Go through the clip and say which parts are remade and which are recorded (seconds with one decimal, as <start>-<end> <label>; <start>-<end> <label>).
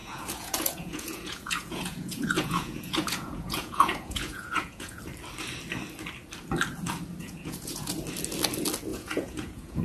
0.0-5.0 remade; 5.0-7.2 recorded; 7.2-7.9 remade; 7.9-8.9 recorded; 8.9-9.8 remade